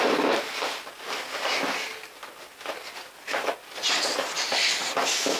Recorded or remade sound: recorded